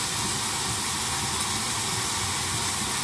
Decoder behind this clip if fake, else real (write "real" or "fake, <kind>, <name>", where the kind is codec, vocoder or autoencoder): real